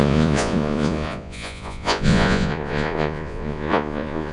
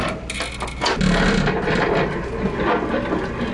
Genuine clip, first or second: second